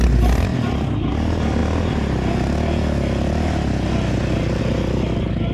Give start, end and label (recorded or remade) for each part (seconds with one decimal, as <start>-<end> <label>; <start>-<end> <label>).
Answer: 0.0-0.5 recorded; 0.5-1.1 remade; 1.1-5.5 recorded